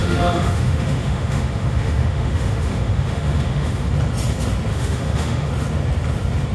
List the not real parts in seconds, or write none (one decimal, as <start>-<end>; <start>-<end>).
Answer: 0.0-3.9; 4.7-5.5